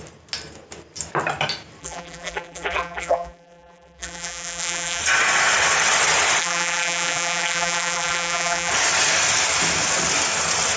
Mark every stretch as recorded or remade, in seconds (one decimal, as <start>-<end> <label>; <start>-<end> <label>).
0.0-1.8 recorded; 1.8-5.0 remade; 5.0-6.4 recorded; 6.4-8.7 remade; 8.7-10.8 recorded